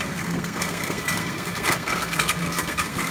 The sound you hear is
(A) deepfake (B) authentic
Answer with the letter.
A